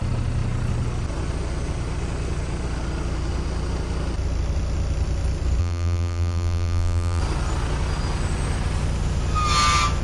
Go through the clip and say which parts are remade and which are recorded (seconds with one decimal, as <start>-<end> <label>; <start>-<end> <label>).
0.0-5.6 recorded; 5.6-7.2 remade; 7.2-10.0 recorded